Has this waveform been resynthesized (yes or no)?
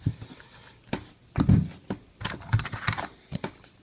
yes